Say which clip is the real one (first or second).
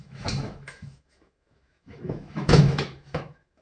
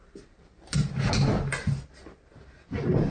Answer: second